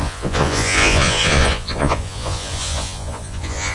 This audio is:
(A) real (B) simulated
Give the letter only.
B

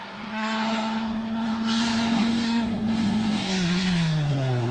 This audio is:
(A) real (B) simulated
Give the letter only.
B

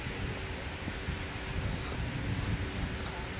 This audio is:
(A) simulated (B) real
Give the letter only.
B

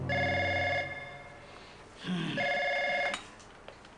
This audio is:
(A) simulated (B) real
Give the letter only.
B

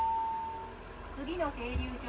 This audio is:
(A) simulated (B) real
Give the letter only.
B